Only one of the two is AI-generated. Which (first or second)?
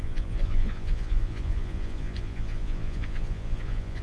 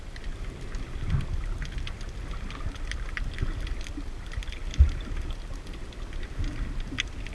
first